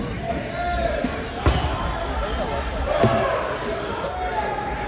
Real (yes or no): yes